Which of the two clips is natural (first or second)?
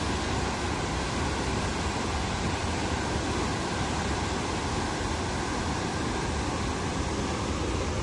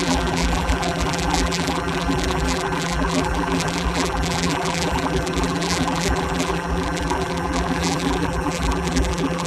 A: first